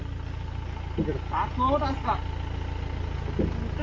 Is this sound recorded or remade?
recorded